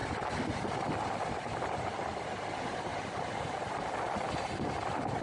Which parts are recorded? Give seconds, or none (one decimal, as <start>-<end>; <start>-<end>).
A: 0.0-1.6; 2.9-5.2